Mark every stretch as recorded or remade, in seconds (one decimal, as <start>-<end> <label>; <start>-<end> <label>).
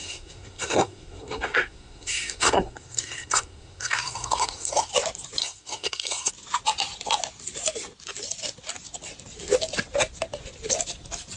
0.0-4.9 remade; 4.9-5.4 recorded; 5.4-6.3 remade; 6.3-11.4 recorded